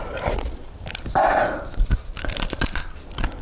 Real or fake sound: real